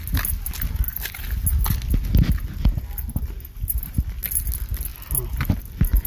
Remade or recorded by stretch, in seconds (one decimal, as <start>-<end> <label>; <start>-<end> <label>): 0.0-6.1 recorded